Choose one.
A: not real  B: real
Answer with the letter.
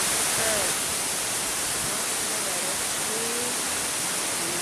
B